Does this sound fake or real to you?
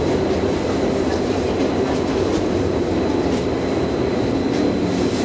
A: real